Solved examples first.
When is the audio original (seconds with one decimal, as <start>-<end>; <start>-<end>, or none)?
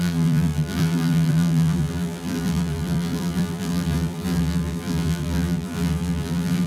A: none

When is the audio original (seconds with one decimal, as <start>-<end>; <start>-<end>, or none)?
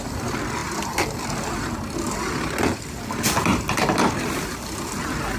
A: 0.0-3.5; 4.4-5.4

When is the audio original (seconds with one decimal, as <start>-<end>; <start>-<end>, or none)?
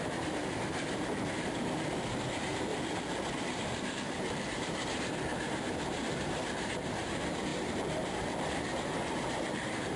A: 2.7-3.3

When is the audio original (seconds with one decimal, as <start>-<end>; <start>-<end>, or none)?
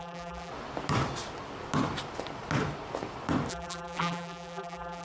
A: 0.5-3.5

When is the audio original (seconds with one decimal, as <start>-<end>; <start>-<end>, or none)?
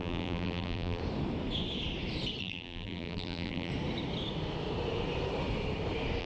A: 1.0-2.4; 3.7-6.2